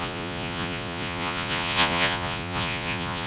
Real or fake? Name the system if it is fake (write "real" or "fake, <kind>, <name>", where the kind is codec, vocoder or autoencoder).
fake, vocoder, Vocos